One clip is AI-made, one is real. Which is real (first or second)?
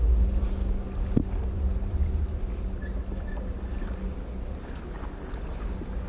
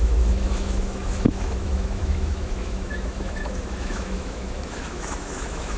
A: first